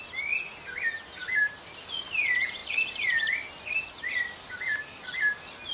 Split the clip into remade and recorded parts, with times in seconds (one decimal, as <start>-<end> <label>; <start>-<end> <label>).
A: 0.0-5.7 recorded

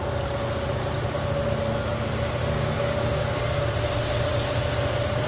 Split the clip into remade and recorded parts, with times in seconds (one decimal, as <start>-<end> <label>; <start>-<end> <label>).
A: 0.0-2.4 recorded; 2.4-3.7 remade; 3.7-5.3 recorded

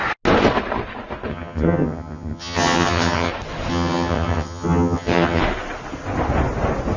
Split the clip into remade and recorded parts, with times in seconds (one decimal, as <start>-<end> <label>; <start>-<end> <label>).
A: 0.0-1.3 recorded; 1.3-3.3 remade; 3.3-3.7 recorded; 3.7-5.4 remade; 5.4-7.0 recorded

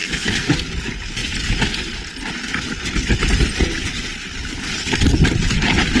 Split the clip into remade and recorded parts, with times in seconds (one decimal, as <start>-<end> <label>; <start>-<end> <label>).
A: 0.0-0.5 remade; 0.5-6.0 recorded

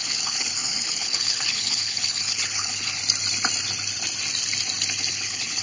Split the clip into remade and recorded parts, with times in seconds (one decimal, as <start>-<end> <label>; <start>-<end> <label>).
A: 0.0-3.0 remade; 3.0-5.1 recorded; 5.1-5.6 remade